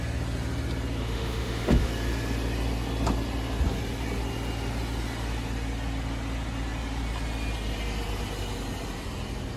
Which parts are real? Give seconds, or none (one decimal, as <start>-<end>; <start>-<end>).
0.0-1.0; 1.9-9.6